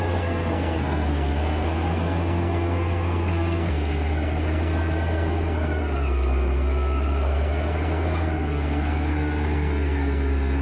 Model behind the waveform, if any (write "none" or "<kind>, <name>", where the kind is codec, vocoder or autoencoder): codec, SNAC